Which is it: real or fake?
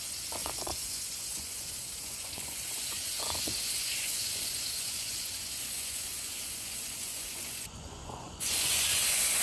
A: fake